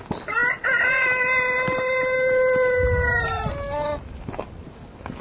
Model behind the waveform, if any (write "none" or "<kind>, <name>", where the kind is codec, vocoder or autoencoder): none